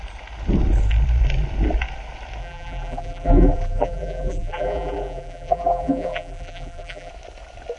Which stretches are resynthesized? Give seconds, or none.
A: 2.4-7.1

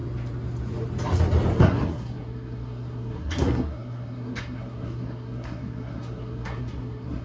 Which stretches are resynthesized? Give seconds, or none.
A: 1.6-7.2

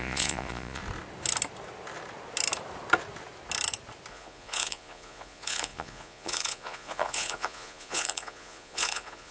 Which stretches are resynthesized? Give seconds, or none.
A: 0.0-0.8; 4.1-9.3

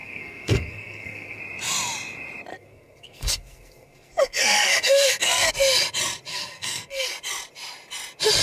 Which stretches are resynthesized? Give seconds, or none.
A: 0.0-1.4; 2.5-5.5; 6.3-7.1

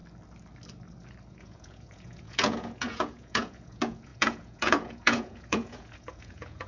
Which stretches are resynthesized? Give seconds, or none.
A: 1.3-6.7